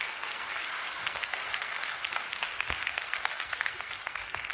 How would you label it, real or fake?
fake